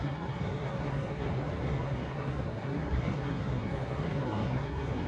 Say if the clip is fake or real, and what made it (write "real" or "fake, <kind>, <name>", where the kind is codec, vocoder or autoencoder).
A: fake, codec, SNAC